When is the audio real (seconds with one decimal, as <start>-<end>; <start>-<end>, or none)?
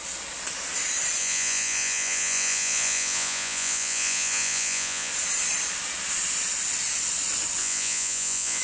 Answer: 0.0-1.2; 5.1-7.6